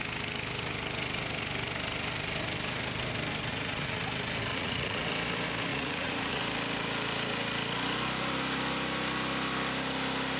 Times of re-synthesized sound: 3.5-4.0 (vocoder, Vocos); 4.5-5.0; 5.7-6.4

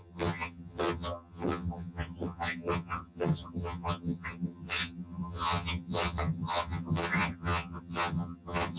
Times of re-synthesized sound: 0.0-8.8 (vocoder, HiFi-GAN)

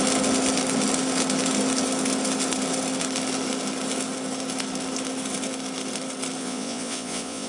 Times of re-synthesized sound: 6.4-7.5 (vocoder, Vocos)